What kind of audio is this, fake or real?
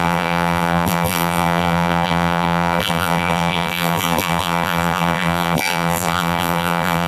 fake